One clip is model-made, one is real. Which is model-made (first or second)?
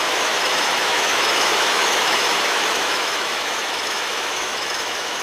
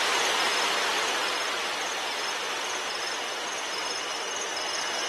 first